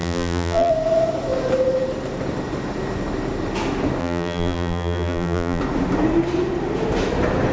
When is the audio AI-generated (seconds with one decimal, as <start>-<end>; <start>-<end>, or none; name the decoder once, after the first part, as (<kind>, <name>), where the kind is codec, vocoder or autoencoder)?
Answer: 0.0-0.7 (vocoder, BigVGAN v2); 4.0-5.6